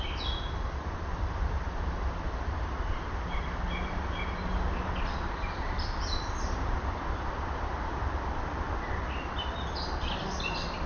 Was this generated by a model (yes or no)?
yes